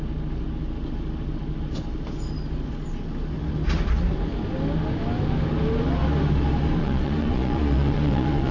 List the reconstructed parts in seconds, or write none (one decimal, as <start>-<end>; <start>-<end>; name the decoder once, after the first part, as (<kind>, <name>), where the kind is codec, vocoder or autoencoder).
6.8-8.5 (vocoder, Vocos)